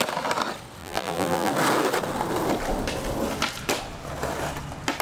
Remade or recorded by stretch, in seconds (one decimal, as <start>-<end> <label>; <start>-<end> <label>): 0.0-0.8 recorded; 0.8-1.5 remade; 1.5-5.0 recorded